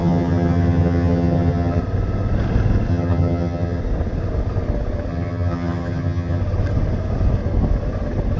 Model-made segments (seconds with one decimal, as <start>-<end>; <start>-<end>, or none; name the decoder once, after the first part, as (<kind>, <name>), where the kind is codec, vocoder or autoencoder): 0.0-1.8 (vocoder, HiFi-GAN); 2.9-3.8; 5.1-6.4